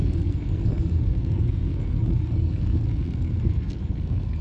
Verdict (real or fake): fake